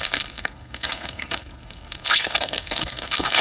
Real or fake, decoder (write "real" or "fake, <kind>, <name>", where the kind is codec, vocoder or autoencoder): fake, codec, SNAC